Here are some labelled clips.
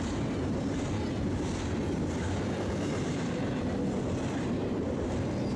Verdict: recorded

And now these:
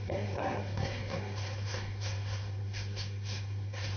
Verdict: remade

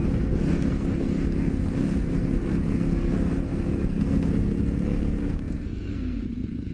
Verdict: remade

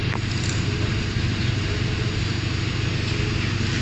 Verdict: recorded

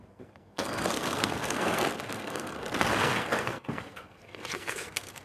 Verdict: remade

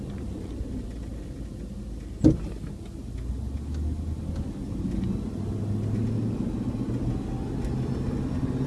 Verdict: recorded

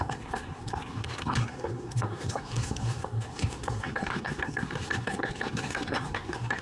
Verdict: remade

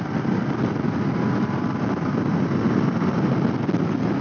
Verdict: recorded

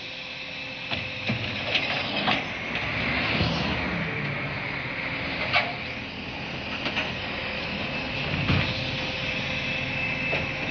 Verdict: recorded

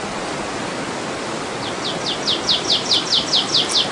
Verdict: recorded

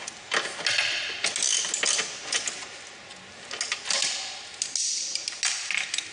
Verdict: recorded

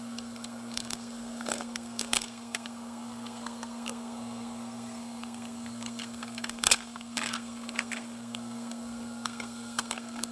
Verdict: remade